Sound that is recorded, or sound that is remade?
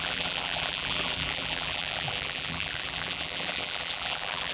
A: remade